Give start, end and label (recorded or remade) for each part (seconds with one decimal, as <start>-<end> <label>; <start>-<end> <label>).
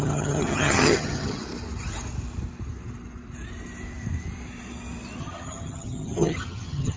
0.0-1.4 remade; 1.4-5.2 recorded; 5.2-7.0 remade